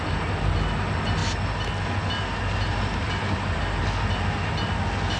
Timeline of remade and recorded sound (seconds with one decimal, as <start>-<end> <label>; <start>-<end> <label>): 0.0-5.2 recorded